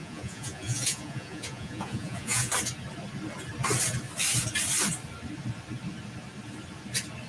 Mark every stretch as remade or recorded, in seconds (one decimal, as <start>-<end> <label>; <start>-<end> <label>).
0.0-2.5 remade; 2.5-7.3 recorded